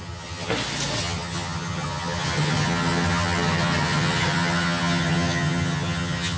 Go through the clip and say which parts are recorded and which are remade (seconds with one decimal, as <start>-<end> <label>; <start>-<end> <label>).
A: 0.0-0.5 remade; 0.5-1.0 recorded; 1.0-6.4 remade